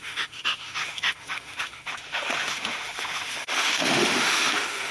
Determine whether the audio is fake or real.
fake